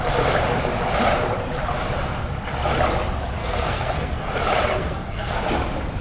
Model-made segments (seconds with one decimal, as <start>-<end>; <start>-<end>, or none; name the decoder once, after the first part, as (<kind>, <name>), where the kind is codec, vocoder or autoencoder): 3.4-4.3 (codec, SNAC); 4.7-5.4